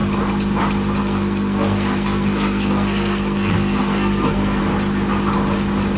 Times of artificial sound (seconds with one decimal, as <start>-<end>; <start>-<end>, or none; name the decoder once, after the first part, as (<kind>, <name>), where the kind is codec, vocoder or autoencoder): 1.0-4.6 (codec, SNAC)

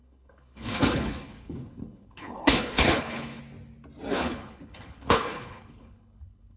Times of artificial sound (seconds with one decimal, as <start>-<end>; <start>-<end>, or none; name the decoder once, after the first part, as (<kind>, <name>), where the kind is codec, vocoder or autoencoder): 0.0-3.4 (codec, HILCodec); 4.1-6.6